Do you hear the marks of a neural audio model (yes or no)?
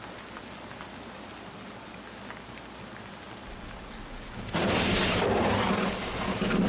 no